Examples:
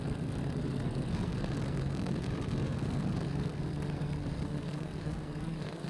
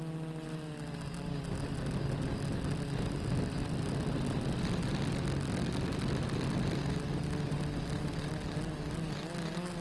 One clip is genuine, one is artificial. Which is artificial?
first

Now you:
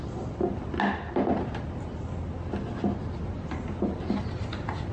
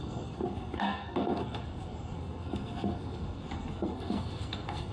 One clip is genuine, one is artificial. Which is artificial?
second